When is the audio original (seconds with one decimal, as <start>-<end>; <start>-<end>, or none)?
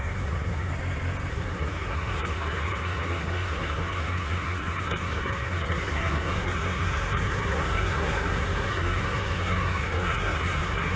0.7-1.3